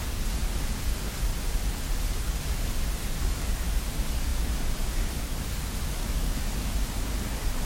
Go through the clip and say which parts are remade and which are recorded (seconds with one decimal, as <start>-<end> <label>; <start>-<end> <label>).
0.0-1.3 remade; 1.3-2.0 recorded; 2.0-7.7 remade